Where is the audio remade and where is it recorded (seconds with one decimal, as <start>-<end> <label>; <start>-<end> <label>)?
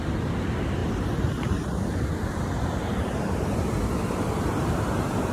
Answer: 0.0-5.3 remade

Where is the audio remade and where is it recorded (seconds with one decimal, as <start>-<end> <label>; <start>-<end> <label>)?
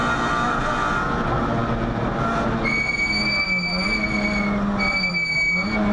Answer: 0.0-5.9 recorded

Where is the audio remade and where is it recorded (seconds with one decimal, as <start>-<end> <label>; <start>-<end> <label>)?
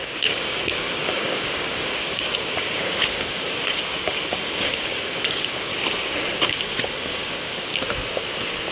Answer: 0.0-5.7 remade; 5.7-6.5 recorded; 6.5-7.7 remade; 7.7-8.7 recorded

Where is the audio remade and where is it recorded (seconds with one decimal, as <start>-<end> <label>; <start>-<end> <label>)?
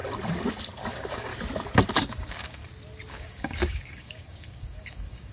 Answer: 0.0-0.9 recorded; 0.9-1.3 remade; 1.3-1.9 recorded; 1.9-2.6 remade; 2.6-3.1 recorded; 3.1-5.3 remade